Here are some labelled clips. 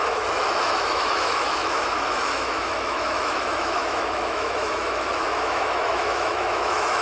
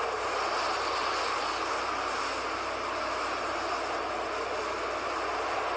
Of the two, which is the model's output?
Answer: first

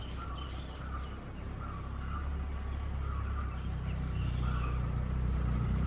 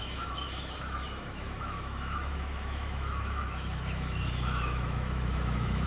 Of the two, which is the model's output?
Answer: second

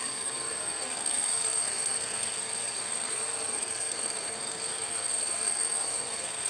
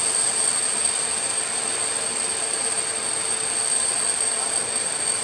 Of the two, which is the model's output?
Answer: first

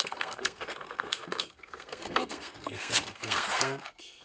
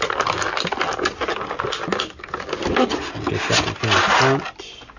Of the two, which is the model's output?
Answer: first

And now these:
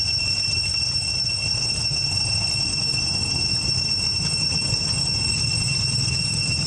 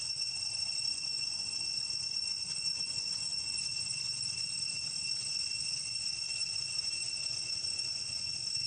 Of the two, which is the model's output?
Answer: second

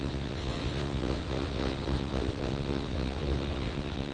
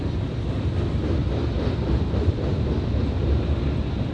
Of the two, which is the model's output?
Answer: first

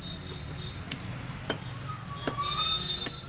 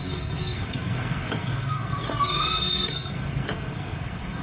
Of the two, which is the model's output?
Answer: second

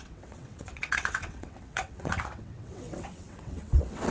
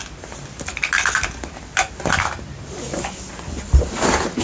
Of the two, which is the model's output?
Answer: first